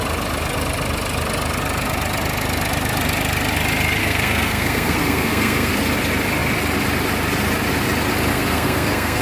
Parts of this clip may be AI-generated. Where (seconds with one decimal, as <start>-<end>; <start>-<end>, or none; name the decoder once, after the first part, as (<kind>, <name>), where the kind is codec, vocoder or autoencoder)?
4.0-5.7 (codec, SNAC); 8.3-9.2

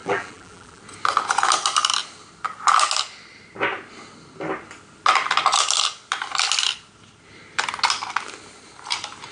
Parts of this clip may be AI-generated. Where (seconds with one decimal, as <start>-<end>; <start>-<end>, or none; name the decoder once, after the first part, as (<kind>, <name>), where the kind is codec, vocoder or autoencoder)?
0.0-0.8 (vocoder, BigVGAN v2)